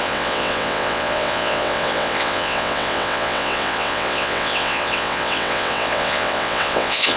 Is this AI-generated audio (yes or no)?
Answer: yes